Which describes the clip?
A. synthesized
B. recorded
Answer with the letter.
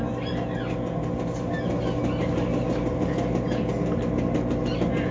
B